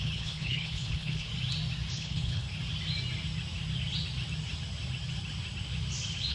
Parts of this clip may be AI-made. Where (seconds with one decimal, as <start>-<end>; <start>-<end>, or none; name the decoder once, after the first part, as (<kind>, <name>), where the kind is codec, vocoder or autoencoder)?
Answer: 0.0-1.3 (codec, HILCodec); 1.9-2.5